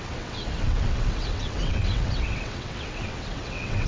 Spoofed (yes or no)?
yes